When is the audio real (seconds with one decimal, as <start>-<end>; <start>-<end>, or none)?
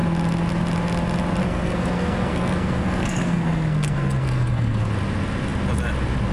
0.0-1.4; 4.9-6.3